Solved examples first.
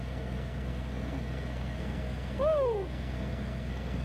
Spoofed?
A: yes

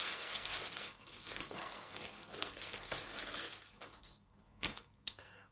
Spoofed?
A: yes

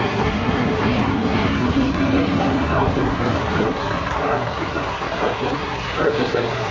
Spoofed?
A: yes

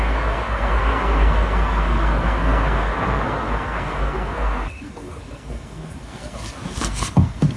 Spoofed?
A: yes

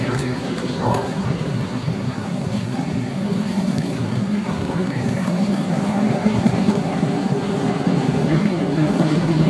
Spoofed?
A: yes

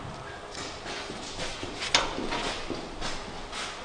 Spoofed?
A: no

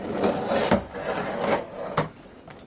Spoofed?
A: no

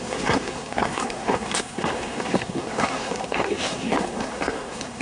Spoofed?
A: yes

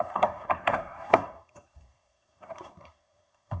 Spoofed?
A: yes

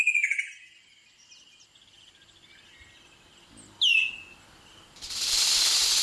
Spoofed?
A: no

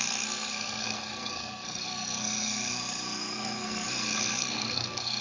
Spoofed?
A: yes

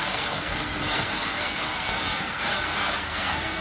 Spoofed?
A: yes